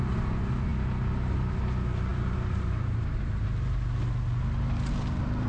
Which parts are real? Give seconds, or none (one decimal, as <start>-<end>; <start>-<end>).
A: 0.0-2.1; 3.3-5.5